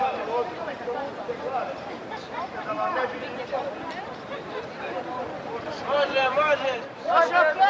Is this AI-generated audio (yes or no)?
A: yes